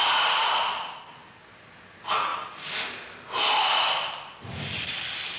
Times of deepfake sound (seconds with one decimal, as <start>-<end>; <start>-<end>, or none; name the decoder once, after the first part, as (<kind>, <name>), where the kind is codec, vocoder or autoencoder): none